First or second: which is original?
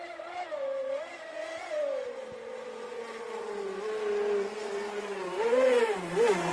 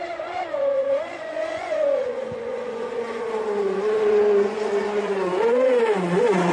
first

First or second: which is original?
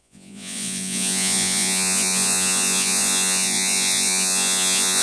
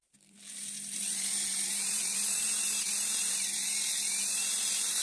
second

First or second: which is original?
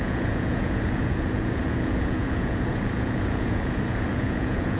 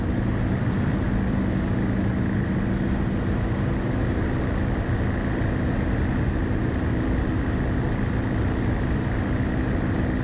second